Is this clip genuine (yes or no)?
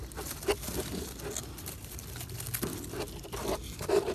yes